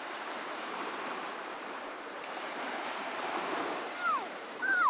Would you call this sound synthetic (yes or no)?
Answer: yes